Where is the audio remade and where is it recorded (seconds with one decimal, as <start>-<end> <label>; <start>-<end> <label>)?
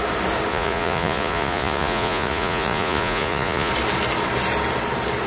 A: 0.0-0.5 recorded; 0.5-3.7 remade; 3.7-5.3 recorded